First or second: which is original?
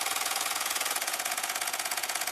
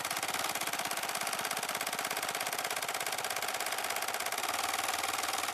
second